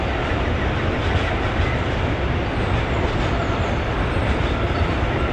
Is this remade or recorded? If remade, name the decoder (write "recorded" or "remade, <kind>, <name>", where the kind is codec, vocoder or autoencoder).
recorded